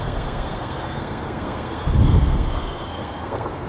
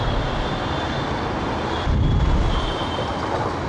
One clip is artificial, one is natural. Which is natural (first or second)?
second